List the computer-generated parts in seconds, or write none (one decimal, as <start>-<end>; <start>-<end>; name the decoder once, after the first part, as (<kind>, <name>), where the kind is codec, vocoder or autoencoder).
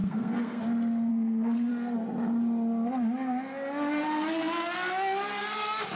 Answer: 0.0-0.6 (codec, SNAC); 1.1-1.7